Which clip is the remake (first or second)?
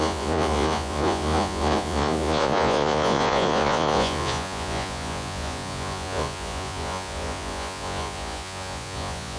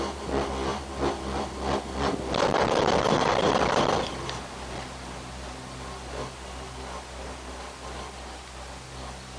first